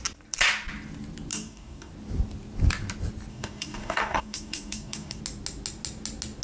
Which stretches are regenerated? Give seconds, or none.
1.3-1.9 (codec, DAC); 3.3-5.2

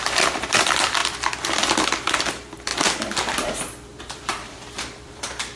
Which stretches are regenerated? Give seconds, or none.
0.0-1.0 (vocoder, BigVGAN v2); 2.3-2.7; 4.0-5.6

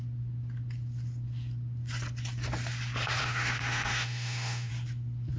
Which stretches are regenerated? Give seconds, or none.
3.2-4.7 (autoencoder, DAC-VAE)

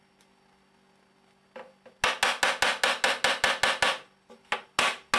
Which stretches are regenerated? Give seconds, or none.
none

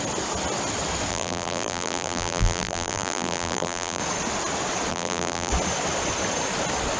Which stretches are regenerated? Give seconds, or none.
1.1-4.0 (vocoder, BigVGAN v2); 4.9-5.5

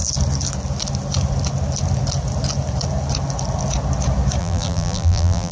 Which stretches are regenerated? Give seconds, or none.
4.4-5.5 (vocoder, BigVGAN v2)